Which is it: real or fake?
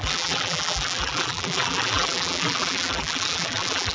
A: fake